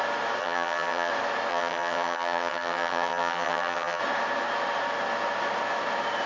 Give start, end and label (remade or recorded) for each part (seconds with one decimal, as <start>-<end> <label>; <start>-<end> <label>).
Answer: 0.0-0.4 recorded; 0.4-1.1 remade; 1.1-1.5 recorded; 1.5-4.0 remade; 4.0-6.3 recorded